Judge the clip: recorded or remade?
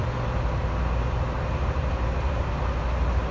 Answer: recorded